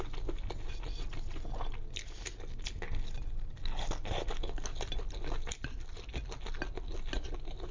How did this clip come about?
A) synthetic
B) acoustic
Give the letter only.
B